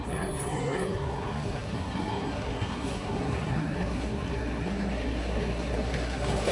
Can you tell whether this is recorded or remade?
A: remade